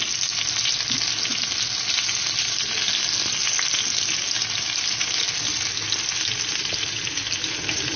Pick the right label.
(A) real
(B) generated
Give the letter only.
A